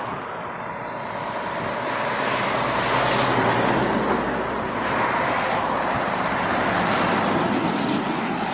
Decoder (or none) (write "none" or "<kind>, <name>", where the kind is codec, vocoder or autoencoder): none